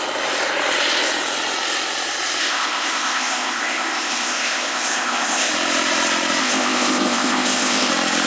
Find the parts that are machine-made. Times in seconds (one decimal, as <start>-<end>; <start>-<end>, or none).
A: 2.4-5.5; 6.4-7.9